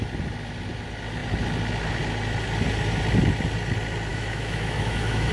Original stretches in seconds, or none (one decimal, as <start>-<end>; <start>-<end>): 0.0-4.1